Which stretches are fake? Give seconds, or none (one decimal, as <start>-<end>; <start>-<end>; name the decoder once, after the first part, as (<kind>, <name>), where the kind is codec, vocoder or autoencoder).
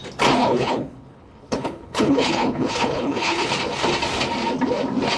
0.4-3.5 (codec, HILCodec)